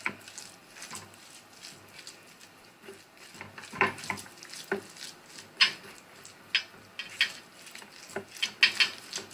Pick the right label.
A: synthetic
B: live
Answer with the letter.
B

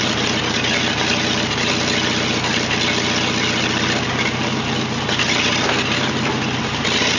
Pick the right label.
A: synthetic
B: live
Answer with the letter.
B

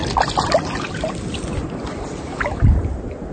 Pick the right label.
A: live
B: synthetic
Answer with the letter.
A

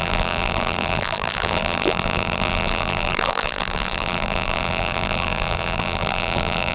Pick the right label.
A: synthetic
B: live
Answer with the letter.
A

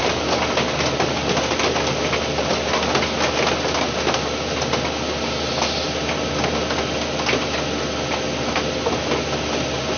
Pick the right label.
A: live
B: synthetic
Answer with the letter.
A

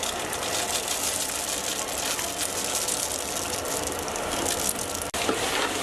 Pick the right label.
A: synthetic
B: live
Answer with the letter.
B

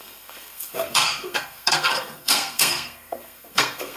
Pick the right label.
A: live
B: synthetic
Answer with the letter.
B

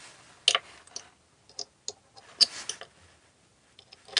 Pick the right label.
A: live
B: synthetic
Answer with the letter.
A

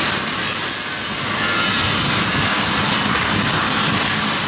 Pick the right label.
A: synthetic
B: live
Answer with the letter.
B